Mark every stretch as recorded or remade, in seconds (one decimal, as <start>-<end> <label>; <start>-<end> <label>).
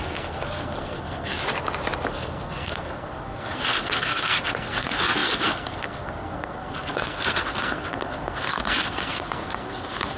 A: 0.0-1.4 remade; 1.4-2.1 recorded; 2.1-10.2 remade